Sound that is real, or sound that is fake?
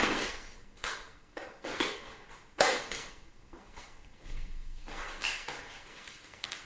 fake